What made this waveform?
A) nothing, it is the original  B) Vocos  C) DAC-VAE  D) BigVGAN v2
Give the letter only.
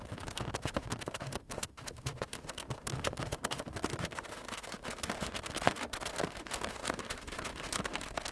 C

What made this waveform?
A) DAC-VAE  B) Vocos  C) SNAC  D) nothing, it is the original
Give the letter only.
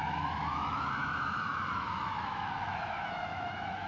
A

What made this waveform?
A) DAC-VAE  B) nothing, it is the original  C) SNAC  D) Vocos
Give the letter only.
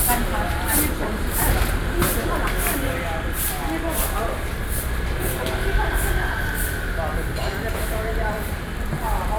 B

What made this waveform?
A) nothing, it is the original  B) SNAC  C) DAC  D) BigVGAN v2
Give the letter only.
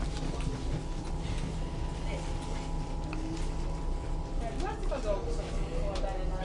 A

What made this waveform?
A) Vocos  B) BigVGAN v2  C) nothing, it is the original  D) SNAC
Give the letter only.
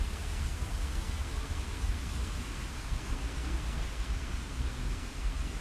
D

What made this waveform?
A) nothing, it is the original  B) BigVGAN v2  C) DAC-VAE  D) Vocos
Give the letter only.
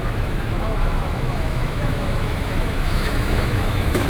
C